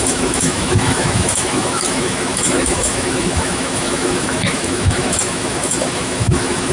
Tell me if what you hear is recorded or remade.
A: remade